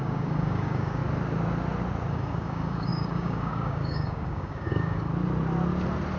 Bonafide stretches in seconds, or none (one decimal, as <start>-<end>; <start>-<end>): 1.0-2.1; 5.1-6.2